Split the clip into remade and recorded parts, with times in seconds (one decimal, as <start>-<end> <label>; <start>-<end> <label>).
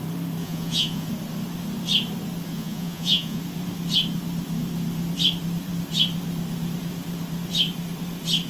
0.0-0.4 recorded; 0.4-1.1 remade; 1.1-2.5 recorded; 2.5-3.4 remade; 3.4-8.5 recorded